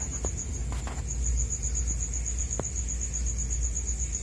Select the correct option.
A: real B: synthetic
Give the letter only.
A